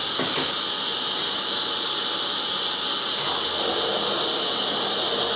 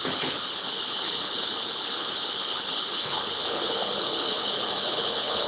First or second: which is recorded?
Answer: first